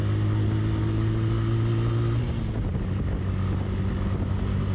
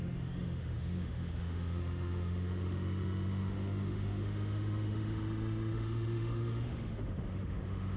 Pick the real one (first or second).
first